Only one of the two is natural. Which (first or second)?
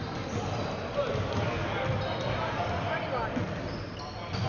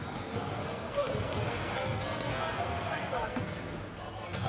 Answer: first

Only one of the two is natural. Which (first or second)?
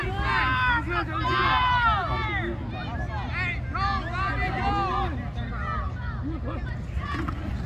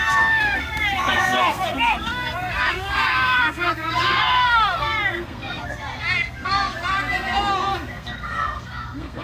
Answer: first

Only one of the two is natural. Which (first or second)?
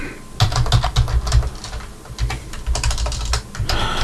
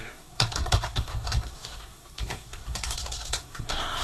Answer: first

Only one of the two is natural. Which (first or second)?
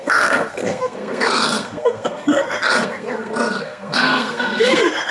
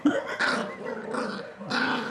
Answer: second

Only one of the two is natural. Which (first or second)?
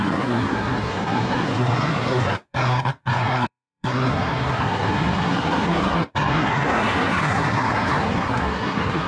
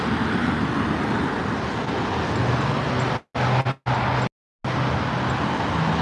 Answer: second